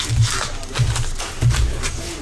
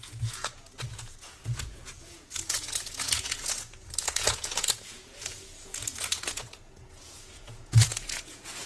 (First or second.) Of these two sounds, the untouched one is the first